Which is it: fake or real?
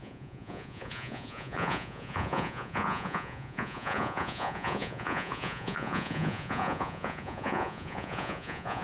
fake